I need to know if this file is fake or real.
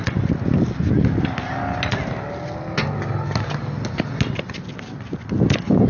real